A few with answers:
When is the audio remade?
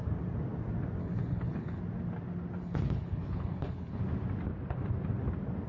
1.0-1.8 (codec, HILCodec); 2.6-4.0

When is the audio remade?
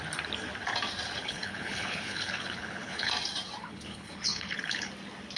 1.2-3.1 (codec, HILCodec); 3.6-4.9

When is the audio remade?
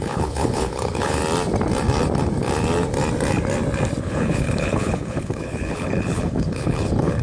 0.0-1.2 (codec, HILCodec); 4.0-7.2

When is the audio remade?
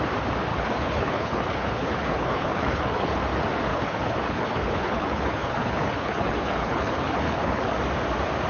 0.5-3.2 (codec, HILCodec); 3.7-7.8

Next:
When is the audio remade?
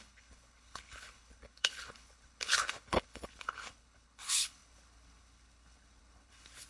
0.0-6.7 (codec, HILCodec)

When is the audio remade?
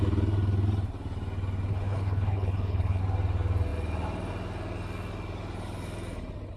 1.7-3.0 (codec, HILCodec)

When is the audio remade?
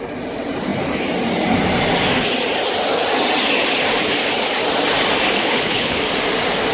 5.4-6.0 (codec, HILCodec)